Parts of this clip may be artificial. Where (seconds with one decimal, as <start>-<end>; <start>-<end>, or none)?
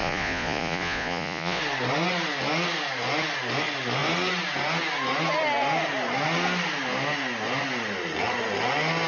0.0-1.6